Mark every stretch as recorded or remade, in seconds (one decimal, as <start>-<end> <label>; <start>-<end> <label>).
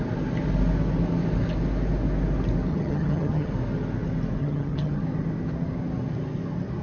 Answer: 0.0-2.7 recorded; 2.7-3.5 remade; 3.5-4.4 recorded; 4.4-5.0 remade; 5.0-6.8 recorded